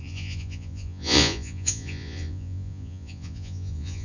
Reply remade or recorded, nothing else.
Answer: remade